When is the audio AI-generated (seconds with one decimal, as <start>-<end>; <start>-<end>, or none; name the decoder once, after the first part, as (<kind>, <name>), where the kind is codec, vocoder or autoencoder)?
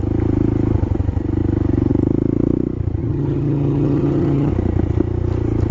3.0-4.5 (vocoder, HiFi-GAN)